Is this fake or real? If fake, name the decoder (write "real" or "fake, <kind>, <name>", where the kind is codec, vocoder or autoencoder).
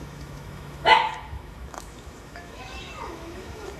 fake, autoencoder, DAC-VAE